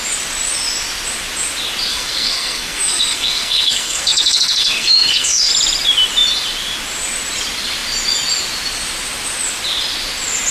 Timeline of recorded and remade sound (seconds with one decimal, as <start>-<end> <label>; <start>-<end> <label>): 0.0-1.9 recorded; 1.9-5.5 remade; 5.5-10.5 recorded